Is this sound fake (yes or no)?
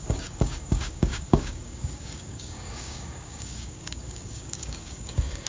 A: yes